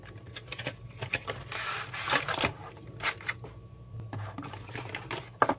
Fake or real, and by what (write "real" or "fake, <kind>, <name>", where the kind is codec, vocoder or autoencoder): real